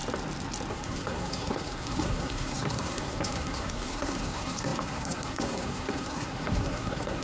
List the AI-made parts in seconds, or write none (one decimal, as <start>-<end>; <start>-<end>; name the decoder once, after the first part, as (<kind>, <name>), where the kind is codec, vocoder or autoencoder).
0.7-7.2 (codec, SNAC)

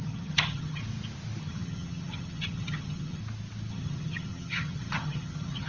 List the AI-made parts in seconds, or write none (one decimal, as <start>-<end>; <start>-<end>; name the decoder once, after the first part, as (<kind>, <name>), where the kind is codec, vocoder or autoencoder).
0.0-0.8 (vocoder, HiFi-GAN); 1.4-3.2; 3.7-5.7

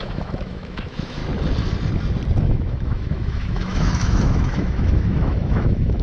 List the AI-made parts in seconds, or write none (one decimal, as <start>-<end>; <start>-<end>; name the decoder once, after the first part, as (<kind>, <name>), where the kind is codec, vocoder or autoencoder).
0.0-1.2 (autoencoder, DAC-VAE); 2.4-6.0

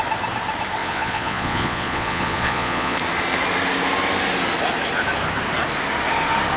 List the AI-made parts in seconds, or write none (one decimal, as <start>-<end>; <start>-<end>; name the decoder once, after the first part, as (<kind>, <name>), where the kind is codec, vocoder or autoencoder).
0.8-3.0 (vocoder, Vocos)

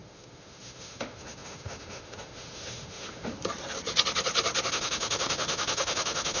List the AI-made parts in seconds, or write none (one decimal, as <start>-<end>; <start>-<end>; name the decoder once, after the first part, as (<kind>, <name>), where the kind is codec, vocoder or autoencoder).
0.0-3.3 (autoencoder, DAC-VAE); 4.7-6.4